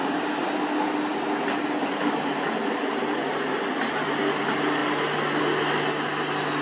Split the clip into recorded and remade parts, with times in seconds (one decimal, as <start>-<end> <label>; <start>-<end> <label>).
0.0-6.6 recorded